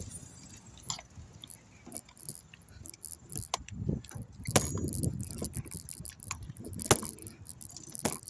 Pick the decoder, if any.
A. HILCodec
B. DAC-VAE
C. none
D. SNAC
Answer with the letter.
C